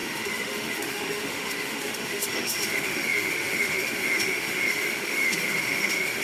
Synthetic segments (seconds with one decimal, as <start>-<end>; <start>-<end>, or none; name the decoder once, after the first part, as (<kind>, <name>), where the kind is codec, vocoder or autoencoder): 0.0-6.2 (autoencoder, DAC-VAE)